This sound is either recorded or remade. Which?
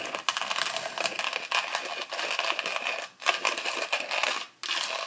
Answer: recorded